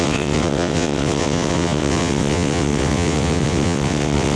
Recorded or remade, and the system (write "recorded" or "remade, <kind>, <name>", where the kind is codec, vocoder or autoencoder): remade, vocoder, WaveNeXt